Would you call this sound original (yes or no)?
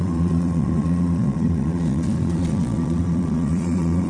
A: no